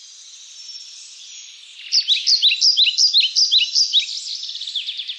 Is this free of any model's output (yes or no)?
yes